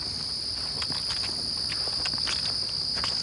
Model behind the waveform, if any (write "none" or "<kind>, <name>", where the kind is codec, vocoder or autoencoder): none